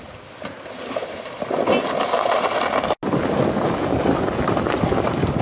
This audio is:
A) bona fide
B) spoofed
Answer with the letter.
A